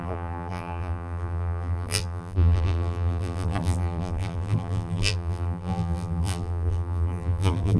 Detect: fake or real fake